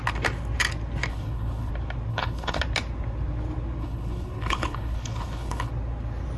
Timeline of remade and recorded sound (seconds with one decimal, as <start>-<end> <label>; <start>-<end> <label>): 0.0-1.1 recorded; 1.1-1.7 remade; 1.7-2.1 recorded; 2.1-2.6 remade; 2.6-3.8 recorded; 3.8-5.7 remade; 5.7-6.4 recorded